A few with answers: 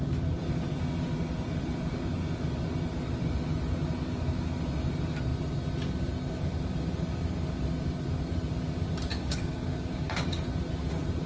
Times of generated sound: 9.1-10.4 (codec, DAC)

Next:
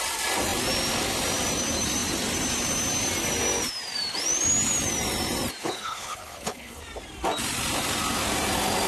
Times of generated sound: 5.6-6.8 (codec, HILCodec)

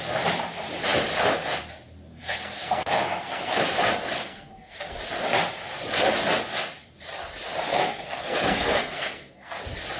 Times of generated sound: 2.2-3.6 (codec, SNAC); 4.2-5.0; 7.7-9.6

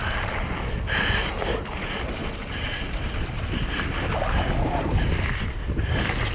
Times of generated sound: none

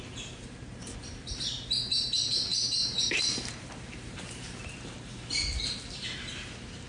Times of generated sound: 0.0-6.9 (vocoder, BigVGAN v2)

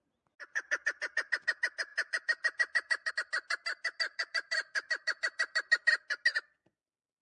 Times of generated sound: 1.9-3.1 (vocoder, BigVGAN v2); 4.1-5.6

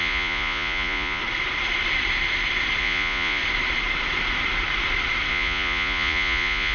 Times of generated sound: 0.0-1.2 (vocoder, Vocos); 2.8-3.4; 5.3-6.7